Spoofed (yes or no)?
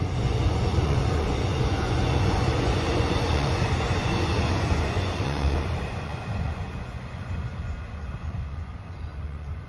yes